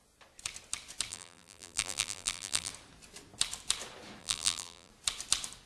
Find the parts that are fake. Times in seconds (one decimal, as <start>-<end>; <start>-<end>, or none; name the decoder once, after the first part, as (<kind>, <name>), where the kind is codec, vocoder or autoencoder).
1.1-2.7 (vocoder, BigVGAN v2); 4.2-4.9